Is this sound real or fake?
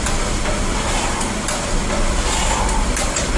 real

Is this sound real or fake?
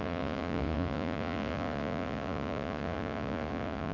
fake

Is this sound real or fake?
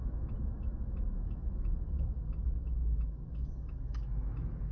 fake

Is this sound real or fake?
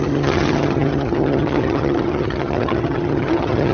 fake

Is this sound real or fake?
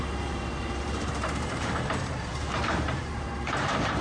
fake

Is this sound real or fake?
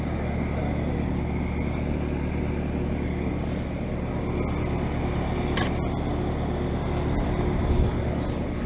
real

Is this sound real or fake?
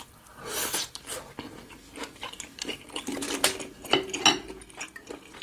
real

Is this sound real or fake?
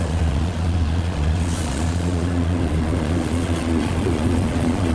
fake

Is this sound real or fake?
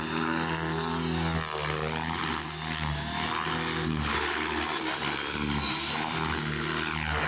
real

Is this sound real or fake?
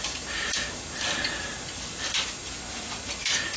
real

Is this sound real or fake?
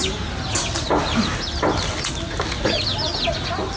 real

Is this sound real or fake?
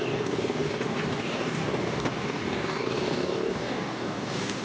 fake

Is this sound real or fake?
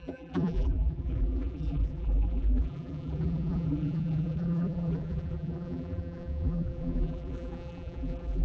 fake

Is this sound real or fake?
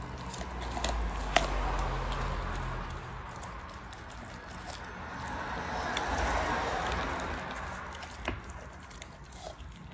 real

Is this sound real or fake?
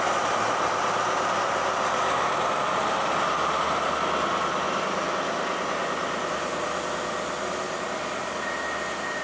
real